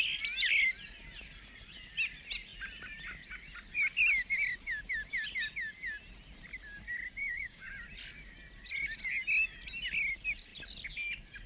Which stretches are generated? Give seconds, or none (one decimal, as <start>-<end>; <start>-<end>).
7.2-7.7